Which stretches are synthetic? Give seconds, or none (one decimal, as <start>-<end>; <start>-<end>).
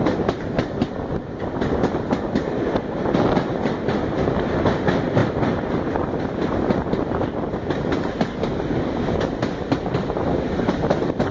none